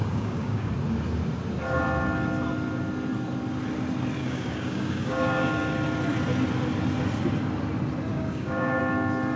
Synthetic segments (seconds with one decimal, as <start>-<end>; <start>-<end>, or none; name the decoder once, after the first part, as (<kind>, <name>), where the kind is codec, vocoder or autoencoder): 0.0-0.7 (codec, DAC); 4.2-5.5; 8.1-8.8